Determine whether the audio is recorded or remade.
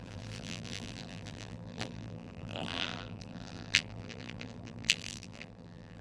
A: remade